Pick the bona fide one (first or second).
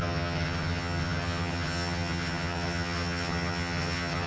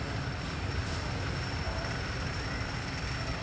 second